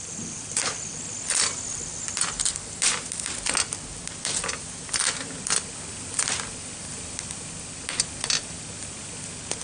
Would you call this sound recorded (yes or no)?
yes